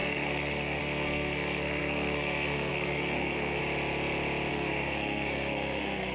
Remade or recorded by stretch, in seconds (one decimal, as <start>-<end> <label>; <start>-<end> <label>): 0.0-3.6 remade; 3.6-4.5 recorded; 4.5-6.1 remade